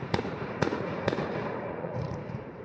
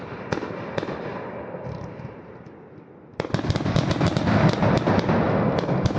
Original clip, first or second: second